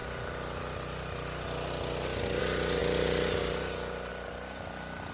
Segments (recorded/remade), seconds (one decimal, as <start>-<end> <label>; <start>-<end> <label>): 0.0-5.1 recorded